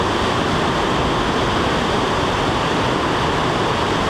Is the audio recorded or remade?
recorded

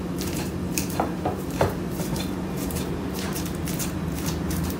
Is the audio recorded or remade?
remade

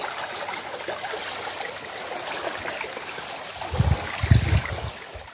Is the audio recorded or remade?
recorded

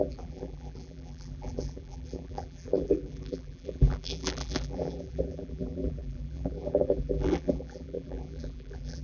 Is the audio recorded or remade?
remade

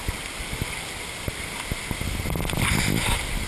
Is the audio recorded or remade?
recorded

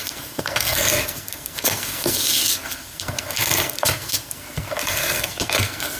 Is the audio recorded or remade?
remade